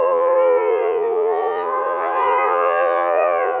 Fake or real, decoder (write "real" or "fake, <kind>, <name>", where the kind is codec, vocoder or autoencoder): fake, vocoder, Vocos